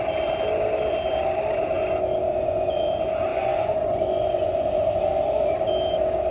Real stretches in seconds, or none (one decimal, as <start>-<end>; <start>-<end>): 0.0-2.3; 2.8-3.3; 4.9-6.3